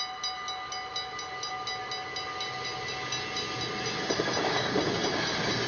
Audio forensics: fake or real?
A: real